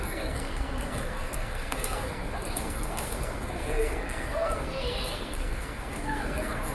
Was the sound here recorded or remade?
remade